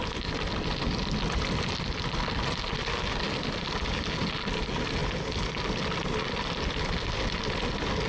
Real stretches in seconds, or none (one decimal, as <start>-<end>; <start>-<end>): 0.0-8.1